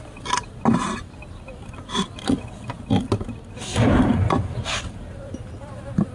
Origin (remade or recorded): recorded